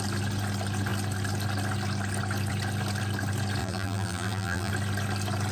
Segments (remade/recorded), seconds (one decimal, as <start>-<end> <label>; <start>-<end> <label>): 0.0-3.6 recorded; 3.6-4.7 remade; 4.7-5.5 recorded